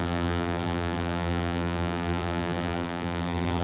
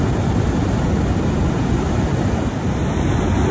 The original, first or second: second